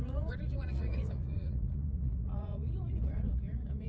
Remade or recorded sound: remade